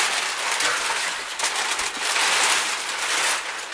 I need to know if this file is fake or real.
real